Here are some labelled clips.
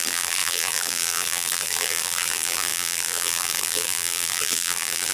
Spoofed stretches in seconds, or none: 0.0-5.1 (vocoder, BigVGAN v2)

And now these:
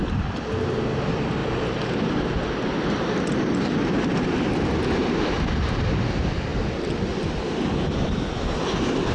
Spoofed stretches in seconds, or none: 3.8-4.3 (vocoder, BigVGAN v2)

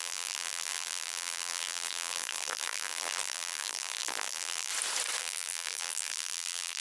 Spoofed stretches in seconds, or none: 0.0-4.7 (vocoder, BigVGAN v2); 5.2-6.8

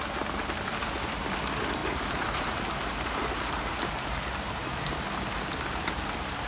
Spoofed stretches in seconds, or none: 1.8-3.7 (vocoder, BigVGAN v2)

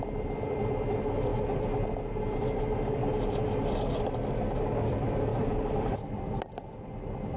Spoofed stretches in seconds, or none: 5.3-5.9 (vocoder, BigVGAN v2)

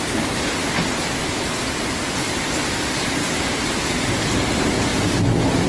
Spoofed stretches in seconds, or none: none

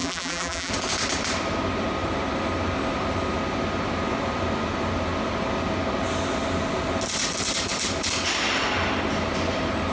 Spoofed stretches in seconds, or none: 0.0-0.7 (vocoder, BigVGAN v2)